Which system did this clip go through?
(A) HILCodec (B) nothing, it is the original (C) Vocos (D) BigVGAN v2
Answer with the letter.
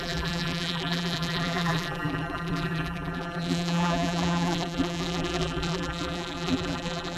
D